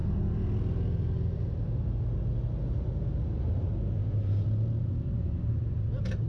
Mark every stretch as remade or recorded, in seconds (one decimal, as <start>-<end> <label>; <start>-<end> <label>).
0.0-6.3 recorded